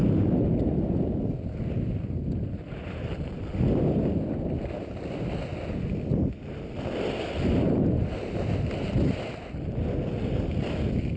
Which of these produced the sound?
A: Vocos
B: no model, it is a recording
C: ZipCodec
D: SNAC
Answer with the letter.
B